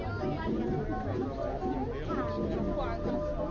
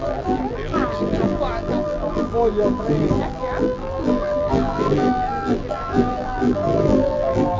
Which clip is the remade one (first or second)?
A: second